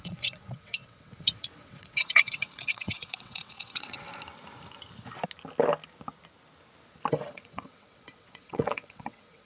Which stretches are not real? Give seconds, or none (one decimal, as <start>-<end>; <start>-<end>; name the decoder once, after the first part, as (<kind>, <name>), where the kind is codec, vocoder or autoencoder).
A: 0.0-4.1 (vocoder, WaveNeXt); 7.1-9.5